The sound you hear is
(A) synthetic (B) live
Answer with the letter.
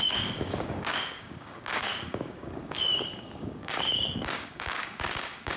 A